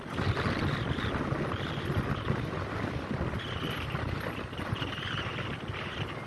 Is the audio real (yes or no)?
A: yes